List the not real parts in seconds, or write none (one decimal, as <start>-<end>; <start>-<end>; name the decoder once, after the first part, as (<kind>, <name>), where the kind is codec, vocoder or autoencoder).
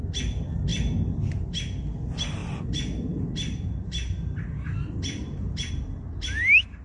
0.7-1.3 (vocoder, BigVGAN v2); 2.4-5.7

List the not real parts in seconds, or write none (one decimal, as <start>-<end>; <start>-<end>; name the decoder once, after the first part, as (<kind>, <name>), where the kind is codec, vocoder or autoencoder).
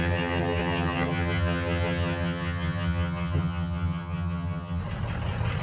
0.0-4.8 (vocoder, HiFi-GAN)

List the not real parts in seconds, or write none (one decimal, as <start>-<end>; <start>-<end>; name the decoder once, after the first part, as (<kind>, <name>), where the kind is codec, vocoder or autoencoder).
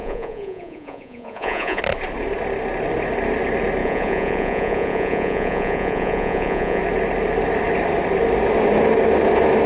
0.0-1.8 (vocoder, Vocos); 3.8-6.8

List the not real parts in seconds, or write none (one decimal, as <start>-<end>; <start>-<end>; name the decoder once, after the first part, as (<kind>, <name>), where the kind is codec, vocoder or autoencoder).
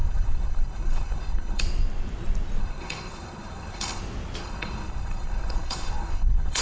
0.0-1.6 (codec, HILCodec); 2.6-4.0; 4.4-6.6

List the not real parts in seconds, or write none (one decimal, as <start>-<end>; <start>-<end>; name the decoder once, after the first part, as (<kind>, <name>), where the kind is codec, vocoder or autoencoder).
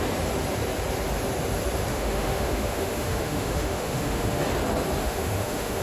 1.9-4.4 (autoencoder, DAC-VAE); 5.0-5.8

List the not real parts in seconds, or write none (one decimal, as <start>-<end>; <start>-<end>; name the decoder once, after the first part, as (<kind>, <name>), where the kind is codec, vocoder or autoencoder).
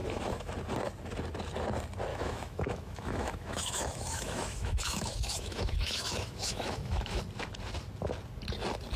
0.0-0.5 (autoencoder, DAC-VAE); 2.1-7.2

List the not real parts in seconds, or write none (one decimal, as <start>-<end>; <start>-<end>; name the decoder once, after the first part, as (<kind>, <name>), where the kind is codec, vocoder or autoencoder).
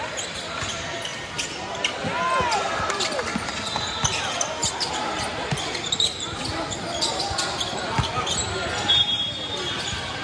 none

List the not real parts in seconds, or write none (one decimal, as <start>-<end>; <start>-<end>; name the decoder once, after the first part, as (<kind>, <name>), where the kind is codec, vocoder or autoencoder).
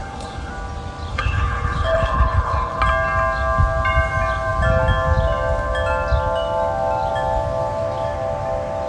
0.0-0.5 (codec, HILCodec); 1.1-2.8